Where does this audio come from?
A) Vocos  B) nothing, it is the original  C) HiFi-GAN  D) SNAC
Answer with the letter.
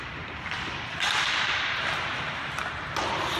B